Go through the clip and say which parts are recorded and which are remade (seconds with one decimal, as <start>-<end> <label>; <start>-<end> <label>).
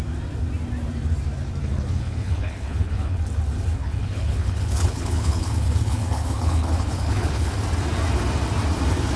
0.0-1.6 recorded; 1.6-3.2 remade; 3.2-3.8 recorded; 3.8-7.5 remade; 7.5-9.2 recorded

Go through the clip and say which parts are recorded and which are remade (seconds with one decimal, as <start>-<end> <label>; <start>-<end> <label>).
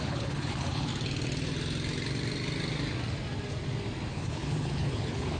0.0-0.9 remade; 0.9-4.1 recorded; 4.1-5.4 remade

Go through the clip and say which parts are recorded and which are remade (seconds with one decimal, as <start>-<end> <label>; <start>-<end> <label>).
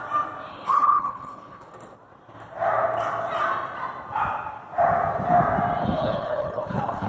0.0-0.5 recorded; 0.5-1.7 remade; 1.7-5.8 recorded; 5.8-7.1 remade